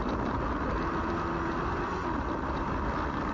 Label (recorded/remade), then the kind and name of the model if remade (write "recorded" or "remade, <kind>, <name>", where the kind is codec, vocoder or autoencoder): recorded